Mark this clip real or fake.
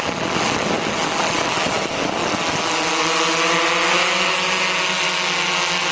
real